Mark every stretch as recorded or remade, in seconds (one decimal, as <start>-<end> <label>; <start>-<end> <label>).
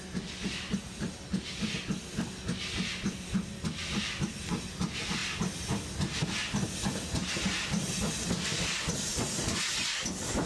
0.0-10.5 recorded